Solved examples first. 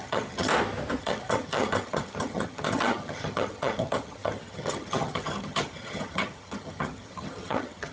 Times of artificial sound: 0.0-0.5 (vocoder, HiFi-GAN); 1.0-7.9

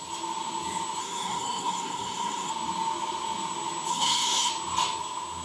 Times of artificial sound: 1.0-2.5 (codec, SNAC); 3.9-4.5

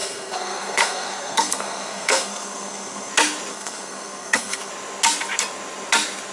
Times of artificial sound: 0.0-3.1 (codec, SNAC); 3.5-4.7

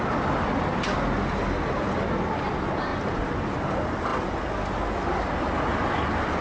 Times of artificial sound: none

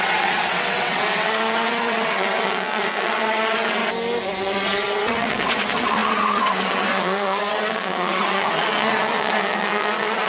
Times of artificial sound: 0.0-3.8 (vocoder, WaveNeXt); 4.4-10.3

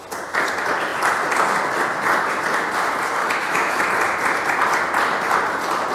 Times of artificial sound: 3.2-3.9 (autoencoder, DAC-VAE)

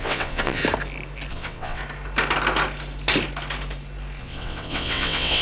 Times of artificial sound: 0.0-0.6 (vocoder, WaveNeXt); 1.3-1.8; 4.2-5.4